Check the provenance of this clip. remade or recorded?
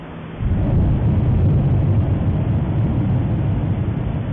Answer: recorded